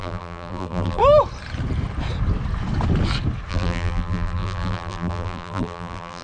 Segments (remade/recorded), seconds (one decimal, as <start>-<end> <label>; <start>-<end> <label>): 0.0-1.0 remade; 1.0-3.5 recorded; 3.5-6.2 remade